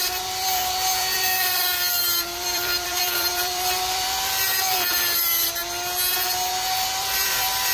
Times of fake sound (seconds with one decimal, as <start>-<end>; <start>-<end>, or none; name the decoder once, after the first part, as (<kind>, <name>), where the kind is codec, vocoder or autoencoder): 0.0-5.6 (vocoder, BigVGAN v2); 7.0-7.7